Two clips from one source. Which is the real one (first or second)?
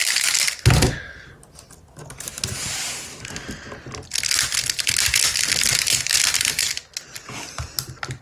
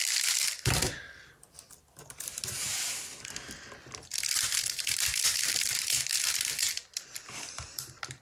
first